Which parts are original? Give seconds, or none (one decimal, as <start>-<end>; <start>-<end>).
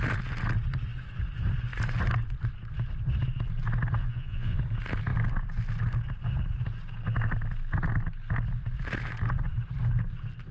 0.0-4.0; 4.6-10.5